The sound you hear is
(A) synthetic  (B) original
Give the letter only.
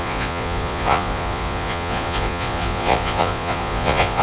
A